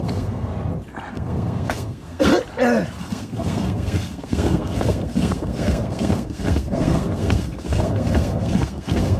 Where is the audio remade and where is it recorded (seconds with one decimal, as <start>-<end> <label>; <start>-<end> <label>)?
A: 0.0-0.5 remade; 0.5-1.1 recorded; 1.1-2.3 remade; 2.3-3.0 recorded; 3.0-9.2 remade